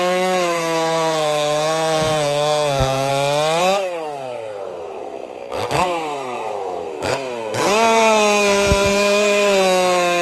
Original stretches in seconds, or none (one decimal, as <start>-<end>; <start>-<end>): 3.1-3.6